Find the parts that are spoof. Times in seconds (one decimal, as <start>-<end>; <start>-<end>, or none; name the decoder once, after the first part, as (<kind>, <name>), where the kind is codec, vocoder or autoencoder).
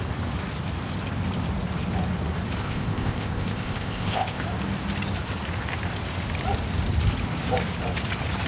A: 2.6-4.4 (codec, ZipCodec)